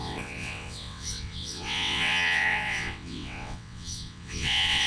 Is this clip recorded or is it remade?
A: remade